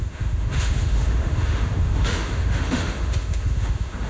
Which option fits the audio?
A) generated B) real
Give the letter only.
A